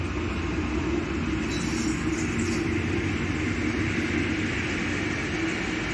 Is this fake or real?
real